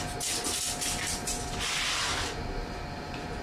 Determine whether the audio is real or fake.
real